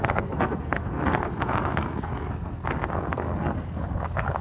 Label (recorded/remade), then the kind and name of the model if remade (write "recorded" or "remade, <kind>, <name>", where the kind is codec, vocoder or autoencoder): remade, codec, SNAC